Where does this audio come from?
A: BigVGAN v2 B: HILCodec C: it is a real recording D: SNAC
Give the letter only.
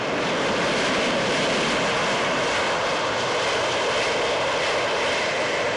C